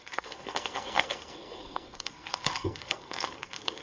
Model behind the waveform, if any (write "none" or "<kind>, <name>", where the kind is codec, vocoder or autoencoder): codec, SNAC